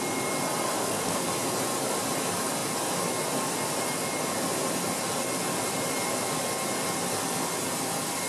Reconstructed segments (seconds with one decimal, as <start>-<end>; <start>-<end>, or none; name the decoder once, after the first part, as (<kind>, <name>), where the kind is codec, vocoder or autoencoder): 0.8-1.3 (codec, SNAC)